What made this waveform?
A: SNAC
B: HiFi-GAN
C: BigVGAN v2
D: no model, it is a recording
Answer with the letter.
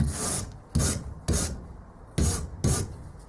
D